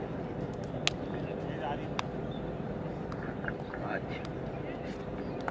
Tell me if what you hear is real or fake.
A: real